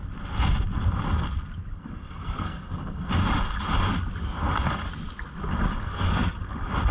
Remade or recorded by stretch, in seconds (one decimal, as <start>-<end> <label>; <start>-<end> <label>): 0.0-1.7 recorded; 1.7-3.1 remade; 3.1-5.8 recorded; 5.8-6.4 remade; 6.4-6.9 recorded